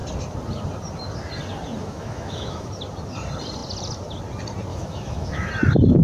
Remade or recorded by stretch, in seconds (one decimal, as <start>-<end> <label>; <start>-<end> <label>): 0.0-1.8 recorded; 1.8-2.7 remade; 2.7-4.7 recorded; 4.7-5.5 remade; 5.5-6.0 recorded